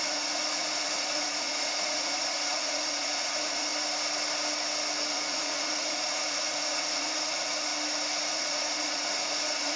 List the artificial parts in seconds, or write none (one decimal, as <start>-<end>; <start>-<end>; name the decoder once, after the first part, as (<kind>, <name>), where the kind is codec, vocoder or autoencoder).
0.0-3.7 (vocoder, Vocos); 5.1-7.7; 8.3-9.8